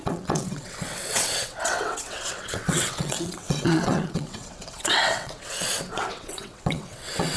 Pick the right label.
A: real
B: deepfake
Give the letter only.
B